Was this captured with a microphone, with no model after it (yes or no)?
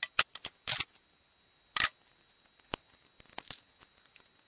yes